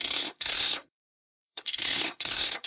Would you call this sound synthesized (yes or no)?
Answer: yes